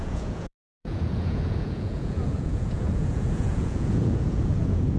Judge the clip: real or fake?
fake